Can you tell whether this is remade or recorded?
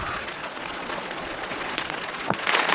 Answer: remade